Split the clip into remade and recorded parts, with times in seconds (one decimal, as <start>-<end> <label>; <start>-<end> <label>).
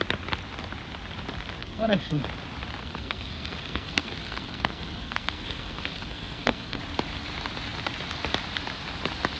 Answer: 0.0-1.6 recorded; 1.6-2.2 remade; 2.2-2.8 recorded; 2.8-6.8 remade; 6.8-9.4 recorded